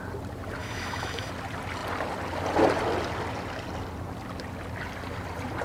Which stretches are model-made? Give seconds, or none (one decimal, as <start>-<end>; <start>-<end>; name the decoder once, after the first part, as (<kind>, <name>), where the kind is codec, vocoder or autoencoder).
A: 0.6-1.3 (autoencoder, DAC-VAE)